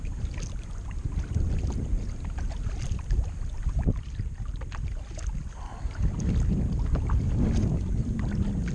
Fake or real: real